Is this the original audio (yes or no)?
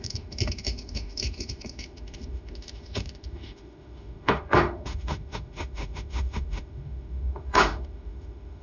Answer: no